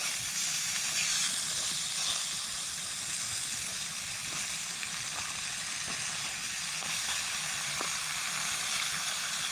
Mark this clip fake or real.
real